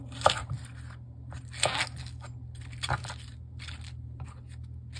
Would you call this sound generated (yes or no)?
no